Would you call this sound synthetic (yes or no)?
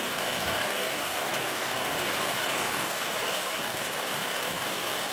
yes